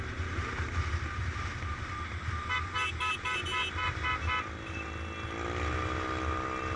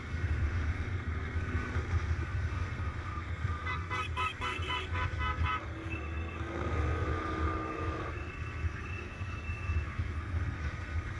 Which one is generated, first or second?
second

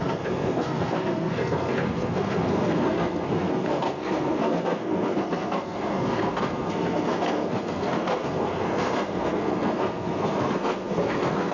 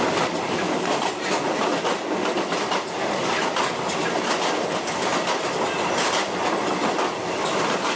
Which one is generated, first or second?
first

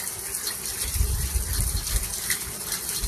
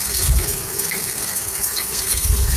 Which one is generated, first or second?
second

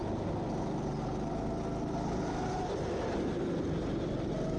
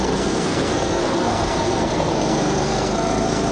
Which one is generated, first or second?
second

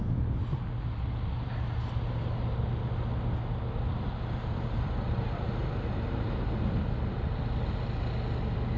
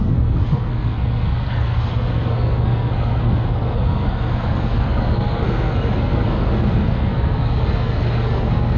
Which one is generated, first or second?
second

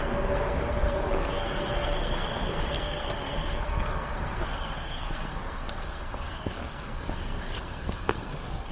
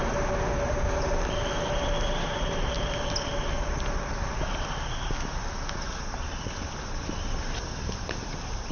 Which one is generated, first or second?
first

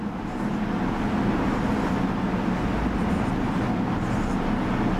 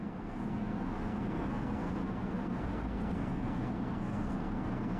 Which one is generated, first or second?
second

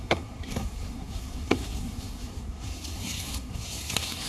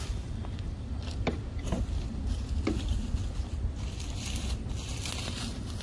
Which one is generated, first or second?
first